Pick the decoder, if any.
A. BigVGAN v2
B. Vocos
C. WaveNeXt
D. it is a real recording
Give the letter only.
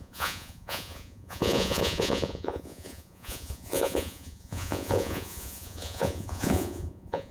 B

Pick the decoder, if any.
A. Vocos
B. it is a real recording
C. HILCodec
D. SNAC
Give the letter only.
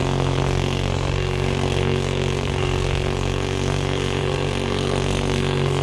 D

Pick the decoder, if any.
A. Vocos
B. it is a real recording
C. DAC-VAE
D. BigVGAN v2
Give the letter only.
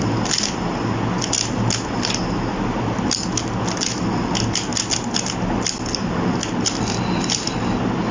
B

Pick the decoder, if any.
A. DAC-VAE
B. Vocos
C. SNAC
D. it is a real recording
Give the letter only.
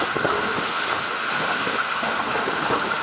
A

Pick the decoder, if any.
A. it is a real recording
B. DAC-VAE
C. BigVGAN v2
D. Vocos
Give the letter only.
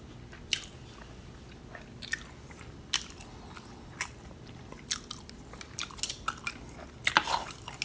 A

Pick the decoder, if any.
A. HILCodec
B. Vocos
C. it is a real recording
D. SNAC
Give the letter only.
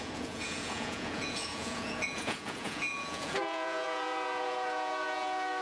B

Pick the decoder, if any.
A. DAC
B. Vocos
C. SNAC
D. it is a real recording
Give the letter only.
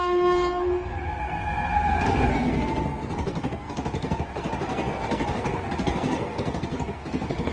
C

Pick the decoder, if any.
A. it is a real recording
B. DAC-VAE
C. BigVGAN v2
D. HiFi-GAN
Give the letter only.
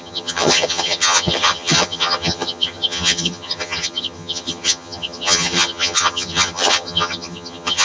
D